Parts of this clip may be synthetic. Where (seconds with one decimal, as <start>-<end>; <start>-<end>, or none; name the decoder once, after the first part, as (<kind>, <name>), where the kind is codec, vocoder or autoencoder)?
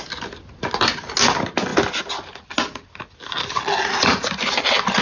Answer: none